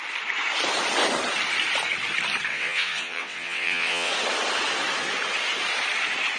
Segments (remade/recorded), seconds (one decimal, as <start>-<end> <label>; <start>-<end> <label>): 0.0-2.5 recorded; 2.5-4.1 remade; 4.1-6.4 recorded

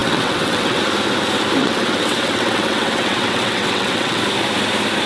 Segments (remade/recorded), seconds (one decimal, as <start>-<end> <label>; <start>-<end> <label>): 0.0-0.8 remade; 0.8-1.6 recorded; 1.6-4.2 remade; 4.2-5.1 recorded

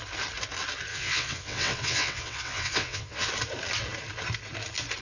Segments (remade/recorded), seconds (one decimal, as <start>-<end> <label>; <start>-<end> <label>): 0.0-0.9 recorded; 0.9-3.3 remade; 3.3-5.0 recorded

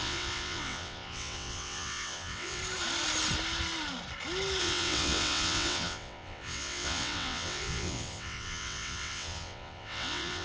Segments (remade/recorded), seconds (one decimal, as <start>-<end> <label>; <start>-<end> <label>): 0.0-2.6 remade; 2.6-4.6 recorded; 4.6-10.4 remade

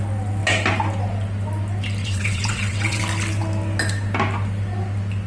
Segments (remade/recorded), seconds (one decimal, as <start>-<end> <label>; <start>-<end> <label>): 0.0-2.0 recorded; 2.0-3.0 remade; 3.0-5.3 recorded

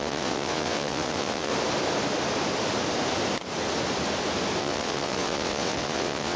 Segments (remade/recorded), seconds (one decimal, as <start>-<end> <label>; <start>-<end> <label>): 0.0-1.5 remade; 1.5-4.6 recorded; 4.6-6.4 remade

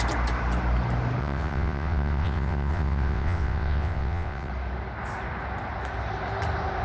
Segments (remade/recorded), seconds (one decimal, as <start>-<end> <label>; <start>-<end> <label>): 0.0-1.2 recorded; 1.2-4.5 remade; 4.5-6.8 recorded